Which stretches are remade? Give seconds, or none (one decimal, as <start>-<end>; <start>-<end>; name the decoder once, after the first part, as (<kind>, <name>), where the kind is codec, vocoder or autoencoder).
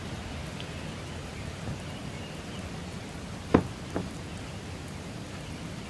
none